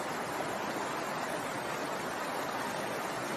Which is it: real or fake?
real